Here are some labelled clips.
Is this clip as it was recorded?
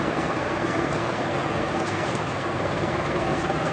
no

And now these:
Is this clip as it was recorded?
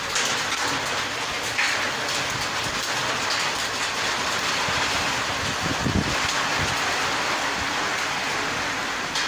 yes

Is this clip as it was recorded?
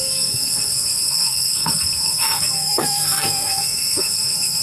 no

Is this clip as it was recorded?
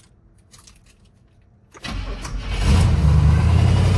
yes